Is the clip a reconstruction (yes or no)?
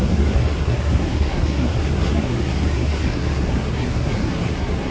yes